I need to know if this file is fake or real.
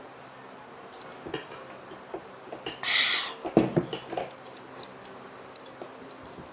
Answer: real